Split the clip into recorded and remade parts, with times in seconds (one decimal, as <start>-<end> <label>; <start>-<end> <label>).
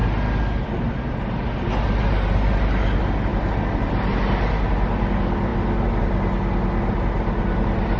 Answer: 0.0-8.0 recorded